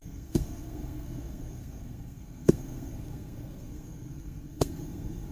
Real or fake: fake